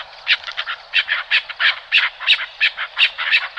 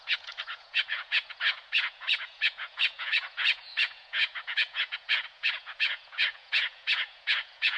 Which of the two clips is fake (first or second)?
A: second